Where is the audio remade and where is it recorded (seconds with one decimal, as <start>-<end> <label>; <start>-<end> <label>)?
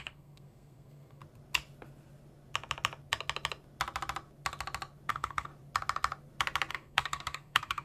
0.0-1.2 remade; 1.2-5.1 recorded; 5.1-5.5 remade; 5.5-6.7 recorded; 6.7-7.8 remade